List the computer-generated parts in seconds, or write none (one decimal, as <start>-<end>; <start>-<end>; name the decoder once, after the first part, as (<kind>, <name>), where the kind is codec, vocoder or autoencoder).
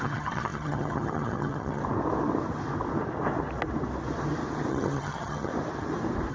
0.0-1.8 (vocoder, HiFi-GAN); 4.7-5.5